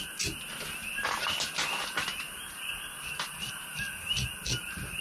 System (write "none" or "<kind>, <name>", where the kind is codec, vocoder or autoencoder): none